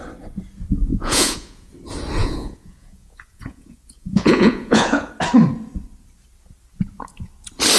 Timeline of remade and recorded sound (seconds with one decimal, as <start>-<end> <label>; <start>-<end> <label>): 0.0-0.9 recorded; 0.9-1.7 remade; 1.7-2.2 recorded; 2.2-5.1 remade; 5.1-7.8 recorded